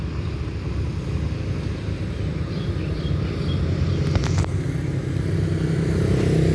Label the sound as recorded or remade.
recorded